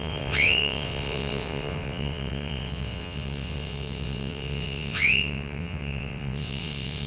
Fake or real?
fake